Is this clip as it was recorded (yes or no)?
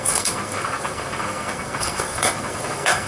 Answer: no